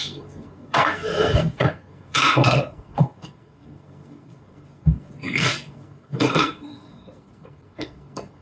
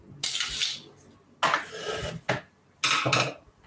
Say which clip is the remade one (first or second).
first